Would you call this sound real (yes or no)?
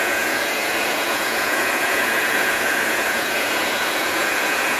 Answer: no